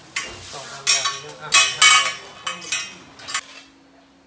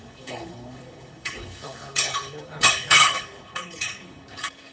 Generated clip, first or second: second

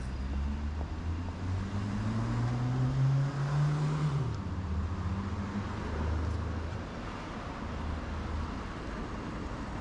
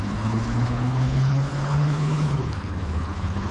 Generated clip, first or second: second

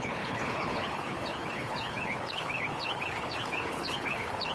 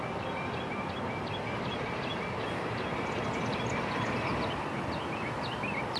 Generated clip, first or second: first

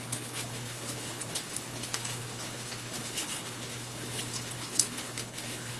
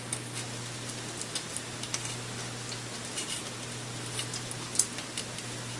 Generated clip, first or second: first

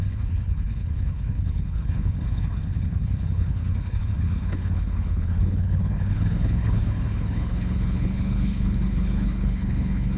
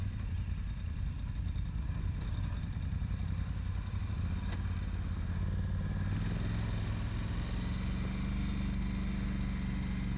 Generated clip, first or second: first